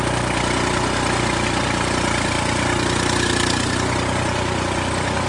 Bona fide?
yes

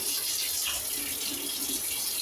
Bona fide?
yes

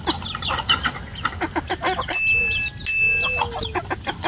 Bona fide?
yes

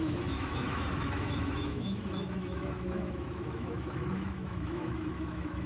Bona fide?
no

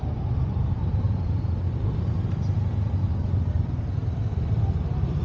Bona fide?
yes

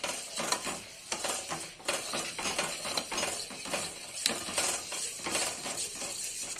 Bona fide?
yes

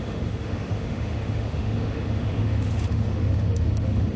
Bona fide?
no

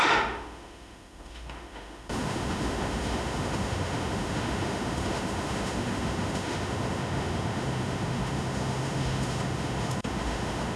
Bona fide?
no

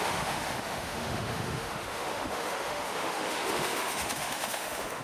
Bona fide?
no